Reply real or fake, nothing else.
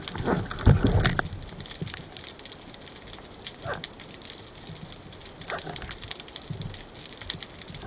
real